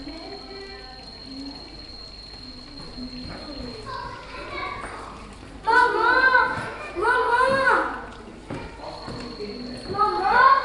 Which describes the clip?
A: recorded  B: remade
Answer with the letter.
A